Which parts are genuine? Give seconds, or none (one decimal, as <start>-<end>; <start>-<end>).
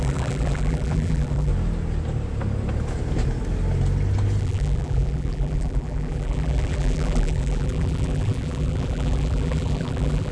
1.5-4.4